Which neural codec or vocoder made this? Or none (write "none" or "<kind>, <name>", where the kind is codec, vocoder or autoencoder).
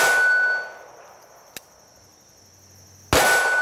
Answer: none